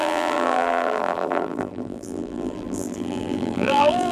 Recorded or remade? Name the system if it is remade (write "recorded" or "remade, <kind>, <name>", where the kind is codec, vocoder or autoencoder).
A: remade, vocoder, BigVGAN v2